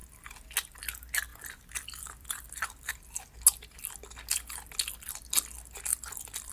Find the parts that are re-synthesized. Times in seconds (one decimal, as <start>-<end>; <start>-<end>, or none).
1.3-2.9; 5.9-6.5